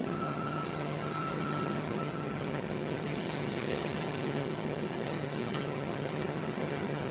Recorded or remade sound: remade